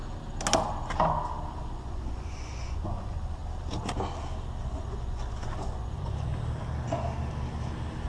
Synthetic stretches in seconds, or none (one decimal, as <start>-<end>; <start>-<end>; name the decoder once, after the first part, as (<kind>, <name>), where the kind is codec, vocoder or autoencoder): 1.5-3.4 (vocoder, Vocos); 4.6-6.3